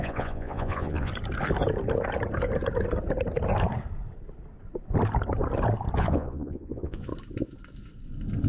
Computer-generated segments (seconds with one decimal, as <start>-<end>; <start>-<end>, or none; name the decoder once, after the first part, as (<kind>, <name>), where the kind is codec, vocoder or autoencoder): 0.0-1.1 (vocoder, Vocos); 6.0-7.1